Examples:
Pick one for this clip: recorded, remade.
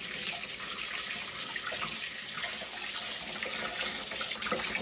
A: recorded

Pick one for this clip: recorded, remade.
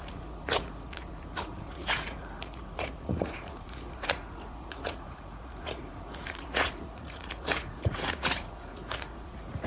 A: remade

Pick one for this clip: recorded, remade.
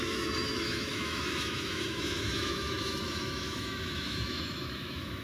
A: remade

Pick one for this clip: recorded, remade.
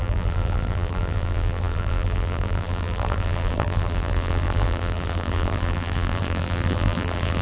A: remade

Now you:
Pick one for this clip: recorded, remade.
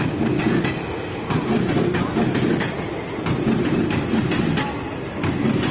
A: recorded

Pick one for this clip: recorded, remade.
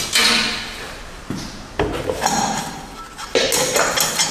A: recorded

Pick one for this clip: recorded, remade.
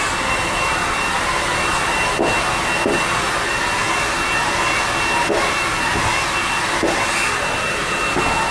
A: recorded